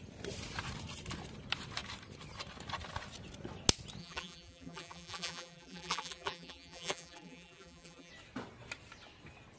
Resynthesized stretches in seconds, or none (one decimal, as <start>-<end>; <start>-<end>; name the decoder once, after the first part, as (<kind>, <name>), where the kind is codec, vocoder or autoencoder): 4.0-8.1 (vocoder, BigVGAN v2)